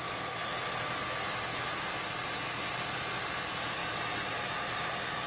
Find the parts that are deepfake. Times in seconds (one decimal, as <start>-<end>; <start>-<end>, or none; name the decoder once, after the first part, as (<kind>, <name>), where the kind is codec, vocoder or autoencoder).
0.0-5.3 (vocoder, BigVGAN v2)